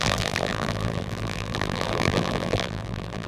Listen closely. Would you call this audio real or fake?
fake